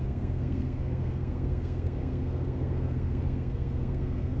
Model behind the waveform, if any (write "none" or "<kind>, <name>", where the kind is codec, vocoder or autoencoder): codec, SNAC